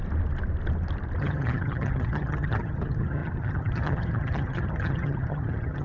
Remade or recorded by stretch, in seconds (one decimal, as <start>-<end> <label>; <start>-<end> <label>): 0.0-1.2 recorded; 1.2-5.8 remade